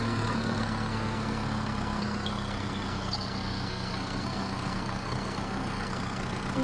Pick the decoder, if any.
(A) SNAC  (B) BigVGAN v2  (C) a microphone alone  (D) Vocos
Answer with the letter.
A